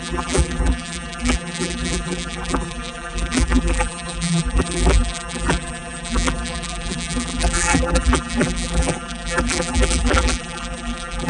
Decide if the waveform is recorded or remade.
remade